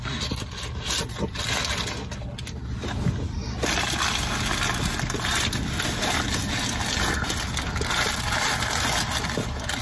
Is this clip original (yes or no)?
yes